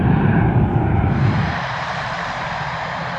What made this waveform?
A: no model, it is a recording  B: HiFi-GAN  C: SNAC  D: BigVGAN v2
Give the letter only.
D